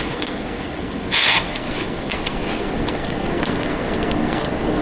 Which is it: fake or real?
fake